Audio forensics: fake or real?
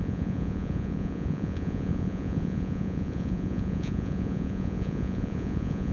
fake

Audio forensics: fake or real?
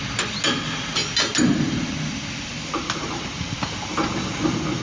real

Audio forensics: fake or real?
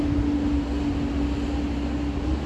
real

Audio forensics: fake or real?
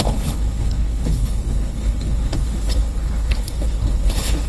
fake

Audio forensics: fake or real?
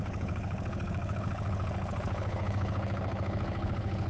fake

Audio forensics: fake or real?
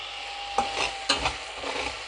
real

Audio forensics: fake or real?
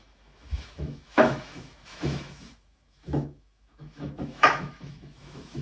fake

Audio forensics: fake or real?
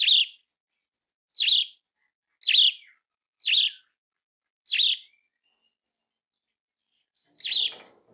real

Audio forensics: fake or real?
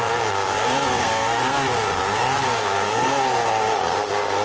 fake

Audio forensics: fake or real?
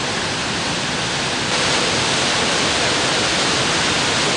real